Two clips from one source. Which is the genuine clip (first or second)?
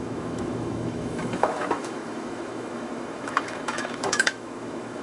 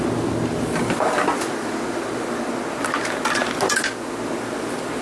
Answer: second